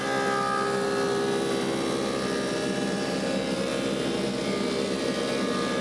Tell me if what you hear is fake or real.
real